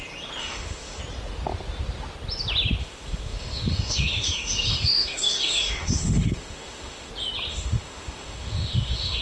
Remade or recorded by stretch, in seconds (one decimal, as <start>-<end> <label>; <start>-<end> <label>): 0.0-0.4 recorded; 0.4-1.0 remade; 1.0-2.8 recorded; 2.8-7.1 remade; 7.1-7.5 recorded; 7.5-9.2 remade